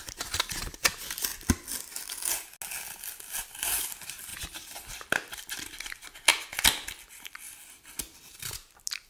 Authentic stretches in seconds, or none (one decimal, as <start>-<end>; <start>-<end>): 0.0-9.1